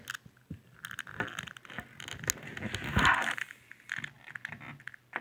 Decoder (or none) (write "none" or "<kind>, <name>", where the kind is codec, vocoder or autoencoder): none